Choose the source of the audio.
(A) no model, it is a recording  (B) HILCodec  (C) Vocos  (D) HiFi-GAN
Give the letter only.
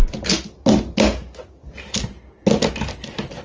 A